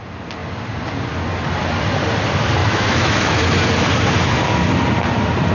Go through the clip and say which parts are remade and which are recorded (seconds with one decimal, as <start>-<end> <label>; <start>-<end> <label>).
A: 0.0-2.6 recorded; 2.6-3.5 remade; 3.5-5.5 recorded